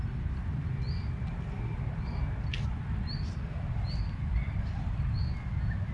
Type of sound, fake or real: real